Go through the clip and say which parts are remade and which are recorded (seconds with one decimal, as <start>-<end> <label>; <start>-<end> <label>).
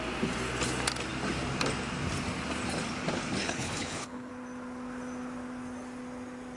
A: 0.0-3.4 recorded; 3.4-4.3 remade; 4.3-6.6 recorded